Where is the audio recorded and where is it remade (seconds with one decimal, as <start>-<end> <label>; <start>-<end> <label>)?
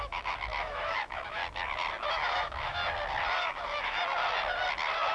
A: 0.0-1.4 remade; 1.4-2.1 recorded; 2.1-2.8 remade; 2.8-3.4 recorded; 3.4-4.0 remade; 4.0-5.1 recorded